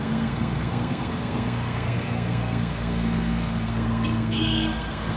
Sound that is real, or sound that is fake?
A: fake